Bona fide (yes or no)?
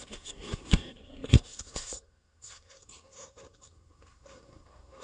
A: no